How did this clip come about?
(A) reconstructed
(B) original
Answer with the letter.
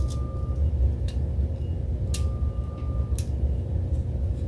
B